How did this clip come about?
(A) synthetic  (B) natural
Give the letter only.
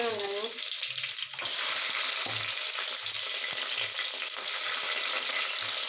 B